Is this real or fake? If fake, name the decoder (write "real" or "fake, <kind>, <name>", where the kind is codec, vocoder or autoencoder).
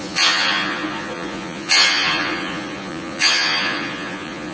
fake, vocoder, Vocos